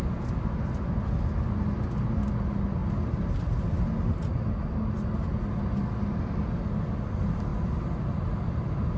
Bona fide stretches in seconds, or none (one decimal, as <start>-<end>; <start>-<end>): 0.0-9.0